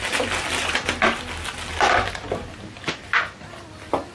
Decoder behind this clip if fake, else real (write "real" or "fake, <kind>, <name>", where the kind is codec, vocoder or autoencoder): real